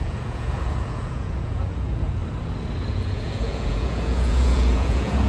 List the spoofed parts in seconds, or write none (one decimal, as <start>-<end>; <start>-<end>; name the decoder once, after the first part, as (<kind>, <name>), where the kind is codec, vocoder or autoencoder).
0.0-2.2 (vocoder, Vocos); 2.9-5.3